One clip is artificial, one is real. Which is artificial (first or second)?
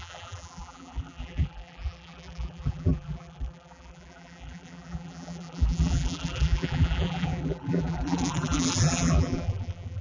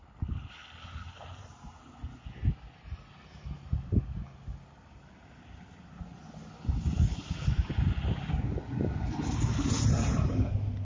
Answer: first